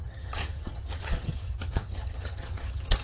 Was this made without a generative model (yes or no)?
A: no